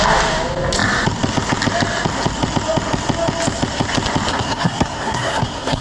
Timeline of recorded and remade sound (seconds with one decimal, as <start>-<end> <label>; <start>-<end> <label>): 0.0-4.3 recorded; 4.3-5.8 remade